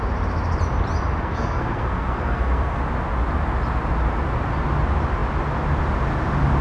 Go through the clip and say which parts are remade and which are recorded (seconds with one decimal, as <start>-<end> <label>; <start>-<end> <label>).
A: 0.0-1.2 recorded; 1.2-2.8 remade; 2.8-6.6 recorded